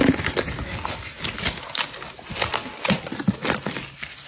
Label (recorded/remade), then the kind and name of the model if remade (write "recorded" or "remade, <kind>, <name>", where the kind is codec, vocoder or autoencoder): recorded